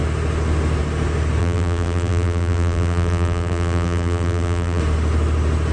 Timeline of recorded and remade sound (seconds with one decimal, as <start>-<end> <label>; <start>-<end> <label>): 0.0-1.4 recorded; 1.4-4.8 remade; 4.8-5.7 recorded